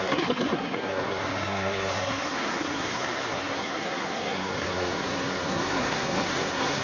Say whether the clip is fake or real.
fake